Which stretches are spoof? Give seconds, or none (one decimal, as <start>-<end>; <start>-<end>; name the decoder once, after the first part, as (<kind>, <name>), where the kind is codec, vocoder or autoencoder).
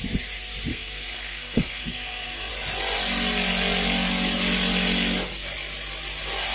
0.7-2.5 (codec, SNAC)